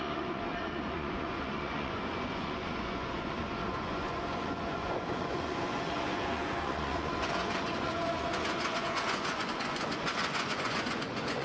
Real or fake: fake